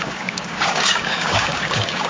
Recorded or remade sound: remade